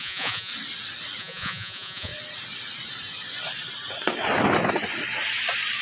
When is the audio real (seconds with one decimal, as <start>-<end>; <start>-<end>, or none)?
0.5-1.2; 2.1-5.8